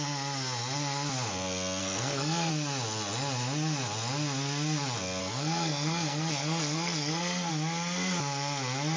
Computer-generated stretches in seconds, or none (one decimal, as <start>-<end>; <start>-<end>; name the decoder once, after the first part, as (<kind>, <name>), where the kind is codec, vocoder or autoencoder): 1.8-2.5 (codec, SNAC); 5.2-7.5